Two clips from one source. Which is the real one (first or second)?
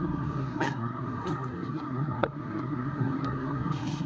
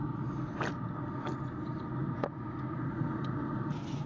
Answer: second